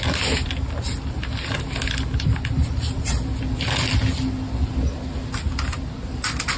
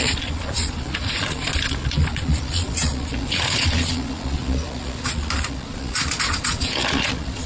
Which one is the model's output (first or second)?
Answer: second